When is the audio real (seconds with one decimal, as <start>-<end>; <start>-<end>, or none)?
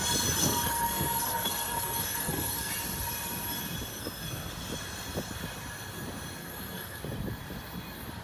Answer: 0.0-0.4; 2.7-3.9; 4.5-6.4; 7.0-8.2